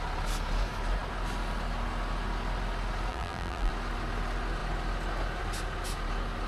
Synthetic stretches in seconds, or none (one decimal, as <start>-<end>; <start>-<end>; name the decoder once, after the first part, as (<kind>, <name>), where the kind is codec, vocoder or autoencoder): 3.1-3.7 (vocoder, BigVGAN v2)